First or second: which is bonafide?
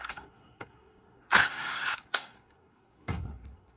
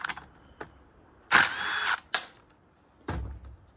second